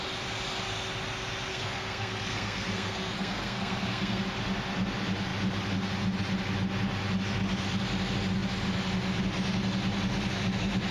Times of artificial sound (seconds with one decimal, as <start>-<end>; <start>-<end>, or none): 1.5-4.2